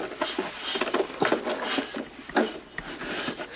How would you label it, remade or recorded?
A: recorded